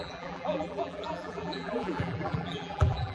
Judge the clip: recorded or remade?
remade